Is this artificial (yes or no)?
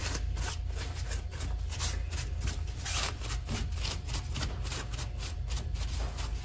no